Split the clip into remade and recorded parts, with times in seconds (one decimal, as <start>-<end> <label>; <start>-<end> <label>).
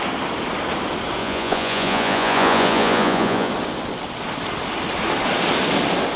0.0-1.2 recorded; 1.2-3.5 remade; 3.5-6.2 recorded